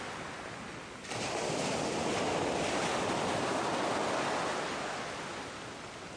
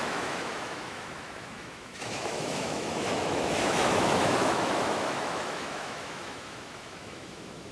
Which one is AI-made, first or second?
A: second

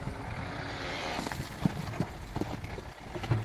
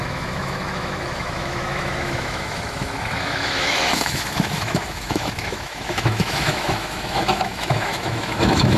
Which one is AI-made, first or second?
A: second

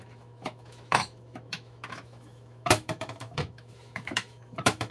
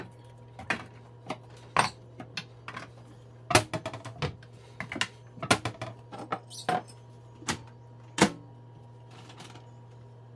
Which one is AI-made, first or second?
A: first